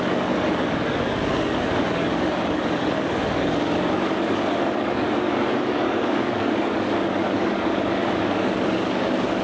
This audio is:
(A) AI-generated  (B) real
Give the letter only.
A